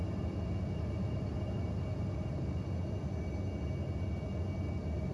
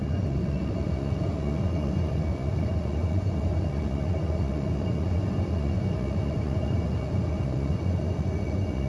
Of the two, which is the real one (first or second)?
first